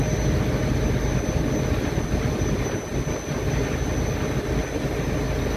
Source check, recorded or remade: recorded